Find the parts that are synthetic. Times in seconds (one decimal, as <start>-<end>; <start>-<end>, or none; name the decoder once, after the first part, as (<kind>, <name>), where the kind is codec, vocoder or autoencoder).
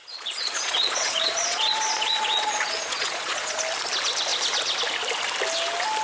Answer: 0.0-3.6 (vocoder, Vocos)